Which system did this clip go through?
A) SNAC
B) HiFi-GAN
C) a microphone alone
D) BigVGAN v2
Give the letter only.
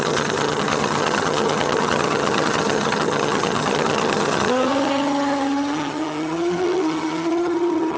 B